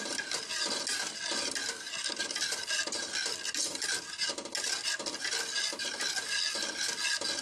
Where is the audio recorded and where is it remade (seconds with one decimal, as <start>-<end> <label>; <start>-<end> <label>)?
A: 0.0-7.4 recorded

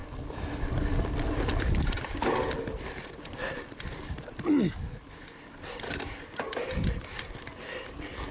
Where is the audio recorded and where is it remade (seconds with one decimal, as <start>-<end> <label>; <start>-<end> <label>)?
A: 0.0-8.3 recorded